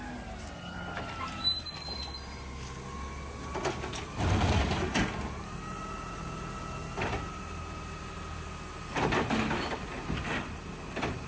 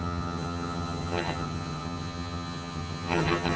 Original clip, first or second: first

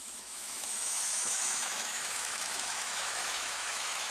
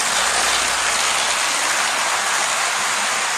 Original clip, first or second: second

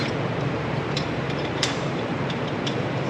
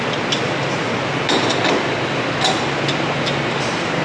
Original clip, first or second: second